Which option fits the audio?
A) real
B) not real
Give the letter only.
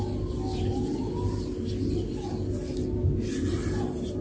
A